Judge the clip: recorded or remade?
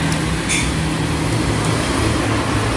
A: recorded